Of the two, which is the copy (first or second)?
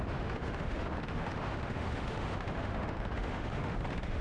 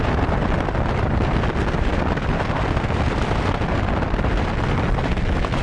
first